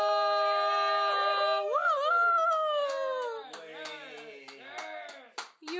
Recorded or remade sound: recorded